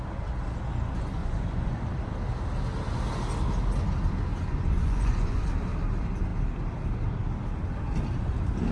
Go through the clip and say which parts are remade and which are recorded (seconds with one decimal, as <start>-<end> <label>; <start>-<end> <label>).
0.0-1.2 recorded; 1.2-1.7 remade; 1.7-4.3 recorded; 4.3-5.5 remade; 5.5-8.7 recorded